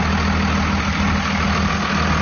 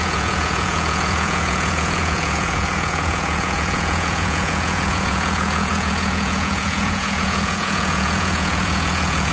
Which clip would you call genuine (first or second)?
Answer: first